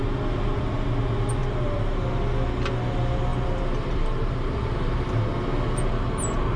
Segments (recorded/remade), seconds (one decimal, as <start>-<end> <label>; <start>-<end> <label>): 0.0-1.4 recorded; 1.4-2.1 remade; 2.1-3.3 recorded; 3.3-5.2 remade; 5.2-6.6 recorded